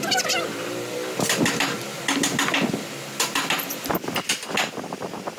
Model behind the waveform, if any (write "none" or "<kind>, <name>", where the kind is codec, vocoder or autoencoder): none